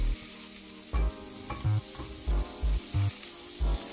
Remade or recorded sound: recorded